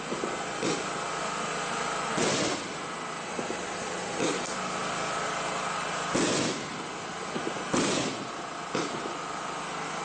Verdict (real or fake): real